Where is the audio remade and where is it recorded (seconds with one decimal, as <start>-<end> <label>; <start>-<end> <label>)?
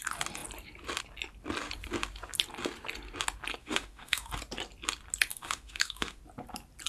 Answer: 0.0-3.6 recorded; 3.6-4.3 remade; 4.3-5.3 recorded; 5.3-6.2 remade; 6.2-6.9 recorded